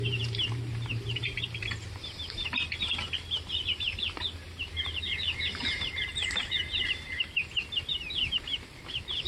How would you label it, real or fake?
fake